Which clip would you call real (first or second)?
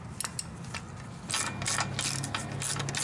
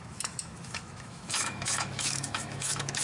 first